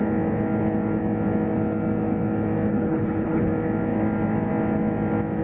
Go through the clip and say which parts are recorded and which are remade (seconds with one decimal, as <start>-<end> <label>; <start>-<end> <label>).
0.0-2.7 recorded; 2.7-3.5 remade; 3.5-5.4 recorded